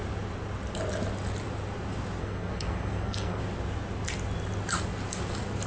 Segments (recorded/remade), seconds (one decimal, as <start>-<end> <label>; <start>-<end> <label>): 0.0-2.2 recorded; 2.2-3.4 remade; 3.4-5.7 recorded